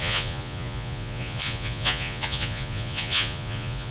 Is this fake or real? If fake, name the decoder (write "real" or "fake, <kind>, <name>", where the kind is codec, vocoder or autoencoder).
fake, vocoder, Vocos